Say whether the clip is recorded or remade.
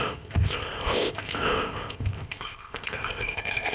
remade